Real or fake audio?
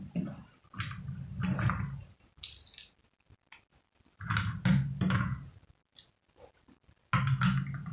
real